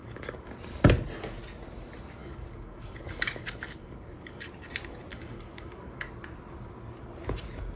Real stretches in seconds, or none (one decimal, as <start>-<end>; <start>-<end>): 0.5-2.2; 4.5-5.1; 6.1-7.8